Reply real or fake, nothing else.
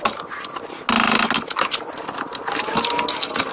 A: real